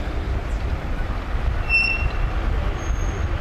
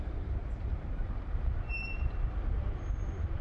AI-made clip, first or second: second